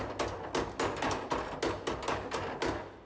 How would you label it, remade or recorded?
recorded